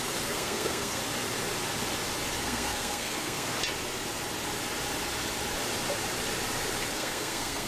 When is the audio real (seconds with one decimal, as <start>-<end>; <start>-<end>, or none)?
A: 1.0-2.4; 3.5-6.9